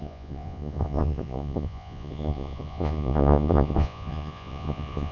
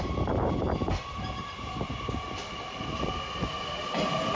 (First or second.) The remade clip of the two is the first